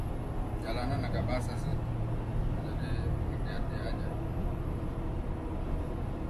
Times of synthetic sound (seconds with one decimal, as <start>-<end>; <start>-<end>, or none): none